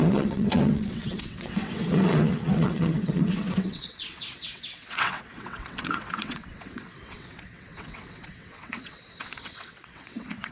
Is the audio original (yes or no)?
no